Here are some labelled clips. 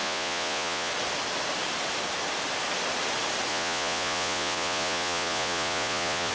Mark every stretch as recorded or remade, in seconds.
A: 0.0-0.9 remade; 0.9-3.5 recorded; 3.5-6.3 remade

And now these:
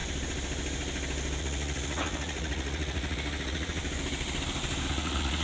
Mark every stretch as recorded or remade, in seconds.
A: 0.0-1.4 recorded; 1.4-3.8 remade; 3.8-4.9 recorded; 4.9-5.4 remade

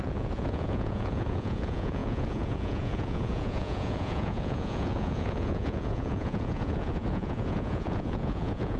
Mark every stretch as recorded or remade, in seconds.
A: 0.0-8.8 remade